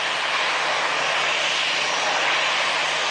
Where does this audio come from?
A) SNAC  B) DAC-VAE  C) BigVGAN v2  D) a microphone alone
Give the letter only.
D